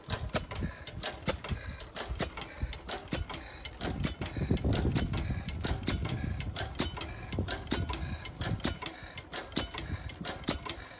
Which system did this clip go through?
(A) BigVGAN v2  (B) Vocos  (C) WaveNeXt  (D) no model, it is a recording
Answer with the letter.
D